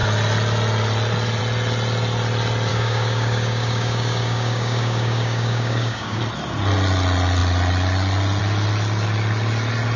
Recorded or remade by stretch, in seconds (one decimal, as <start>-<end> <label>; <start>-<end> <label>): 0.0-2.7 recorded; 2.7-6.2 remade; 6.2-10.0 recorded